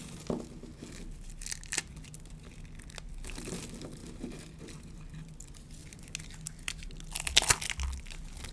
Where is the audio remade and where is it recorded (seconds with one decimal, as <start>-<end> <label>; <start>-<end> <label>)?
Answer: 0.0-8.5 recorded